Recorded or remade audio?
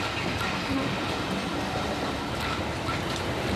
recorded